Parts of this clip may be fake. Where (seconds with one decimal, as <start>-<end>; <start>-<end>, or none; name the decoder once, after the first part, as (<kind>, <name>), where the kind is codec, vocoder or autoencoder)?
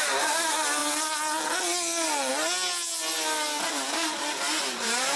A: none